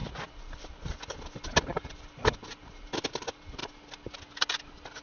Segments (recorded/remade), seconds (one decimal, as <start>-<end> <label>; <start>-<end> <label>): 0.0-5.0 recorded

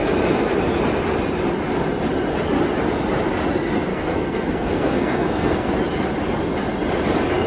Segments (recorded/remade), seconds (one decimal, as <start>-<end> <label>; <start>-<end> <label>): 0.0-3.9 recorded; 3.9-5.7 remade; 5.7-7.5 recorded

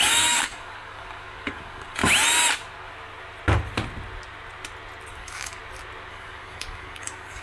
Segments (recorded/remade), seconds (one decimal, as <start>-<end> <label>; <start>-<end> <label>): 0.0-2.0 remade; 2.0-5.1 recorded; 5.1-5.6 remade; 5.6-6.1 recorded; 6.1-7.4 remade

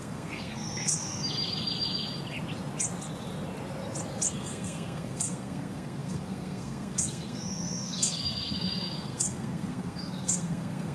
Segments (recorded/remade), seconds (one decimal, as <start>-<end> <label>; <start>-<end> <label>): 0.0-1.2 remade; 1.2-4.3 recorded; 4.3-10.9 remade

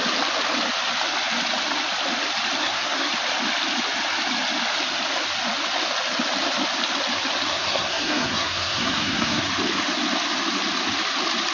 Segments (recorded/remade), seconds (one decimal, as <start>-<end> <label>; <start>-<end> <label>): 0.0-2.6 recorded; 2.6-3.1 remade; 3.1-7.5 recorded; 7.5-9.4 remade; 9.4-11.5 recorded